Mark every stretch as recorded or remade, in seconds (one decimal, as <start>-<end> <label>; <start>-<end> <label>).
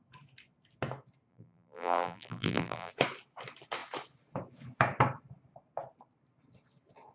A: 0.0-1.3 recorded; 1.3-2.9 remade; 2.9-7.1 recorded